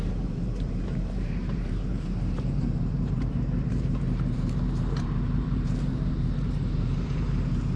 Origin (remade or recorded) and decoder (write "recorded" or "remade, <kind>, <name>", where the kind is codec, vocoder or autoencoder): remade, vocoder, BigVGAN v2